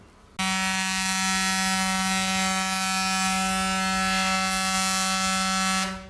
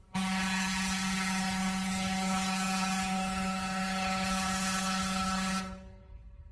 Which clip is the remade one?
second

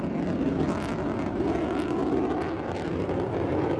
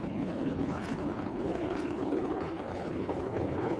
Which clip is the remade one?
second